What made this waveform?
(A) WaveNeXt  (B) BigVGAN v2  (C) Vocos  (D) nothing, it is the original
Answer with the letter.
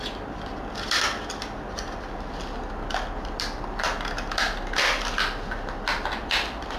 D